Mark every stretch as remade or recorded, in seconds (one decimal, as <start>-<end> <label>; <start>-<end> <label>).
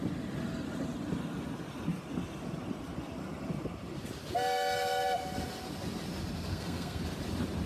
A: 0.0-6.5 recorded; 6.5-7.0 remade; 7.0-7.7 recorded